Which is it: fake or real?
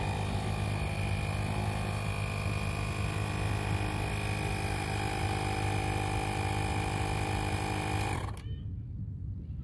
real